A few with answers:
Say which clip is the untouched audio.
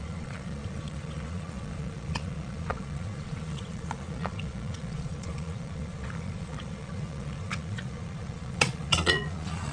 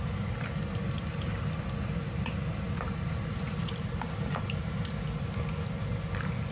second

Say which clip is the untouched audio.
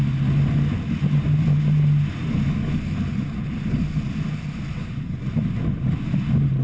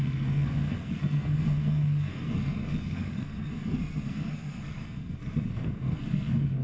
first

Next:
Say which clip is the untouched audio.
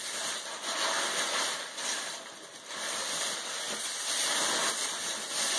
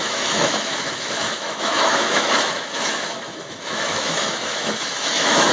first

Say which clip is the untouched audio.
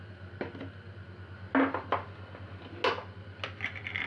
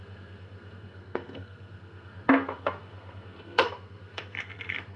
first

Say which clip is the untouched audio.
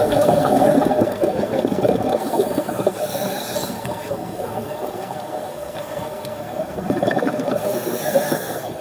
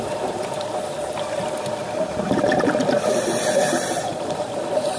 second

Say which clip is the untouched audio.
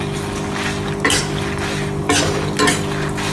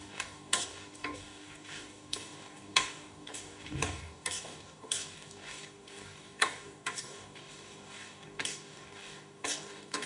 first